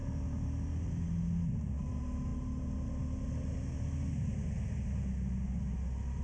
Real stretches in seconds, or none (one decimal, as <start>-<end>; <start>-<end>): 0.0-6.2